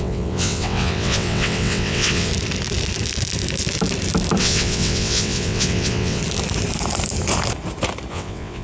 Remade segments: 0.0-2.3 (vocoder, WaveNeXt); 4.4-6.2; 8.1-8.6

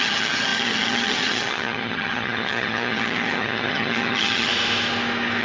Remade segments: 0.0-4.5 (vocoder, HiFi-GAN)